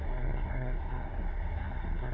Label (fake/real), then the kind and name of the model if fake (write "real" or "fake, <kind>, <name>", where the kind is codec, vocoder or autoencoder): fake, codec, SNAC